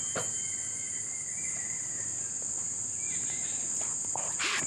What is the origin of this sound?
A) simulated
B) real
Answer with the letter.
B